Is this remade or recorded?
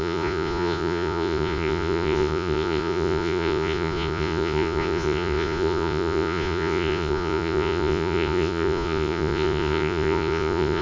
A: remade